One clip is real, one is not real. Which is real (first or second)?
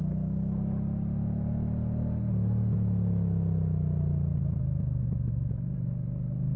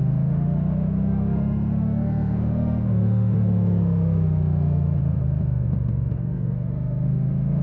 first